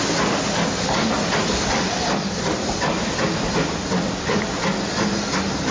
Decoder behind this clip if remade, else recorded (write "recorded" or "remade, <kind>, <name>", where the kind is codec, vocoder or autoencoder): recorded